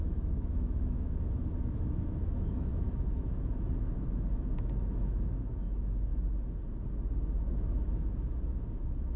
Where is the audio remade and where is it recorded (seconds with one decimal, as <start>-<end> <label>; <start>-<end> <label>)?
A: 0.0-6.1 remade; 6.1-7.5 recorded; 7.5-9.2 remade